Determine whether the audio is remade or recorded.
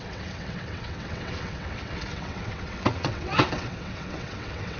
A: remade